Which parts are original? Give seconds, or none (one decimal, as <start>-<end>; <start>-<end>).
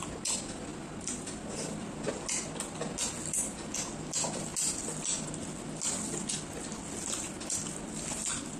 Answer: 0.0-8.6